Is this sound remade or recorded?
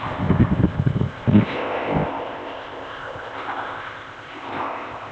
remade